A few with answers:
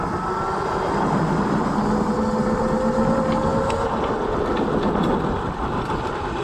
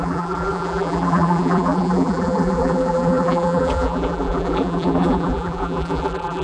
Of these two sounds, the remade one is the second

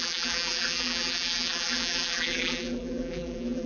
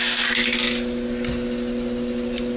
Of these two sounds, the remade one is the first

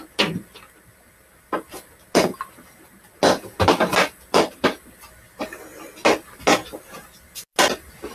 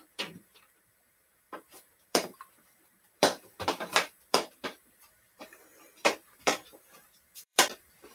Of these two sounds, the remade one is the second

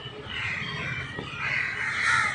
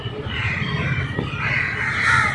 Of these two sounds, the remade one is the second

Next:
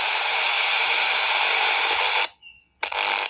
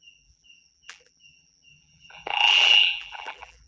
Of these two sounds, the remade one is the second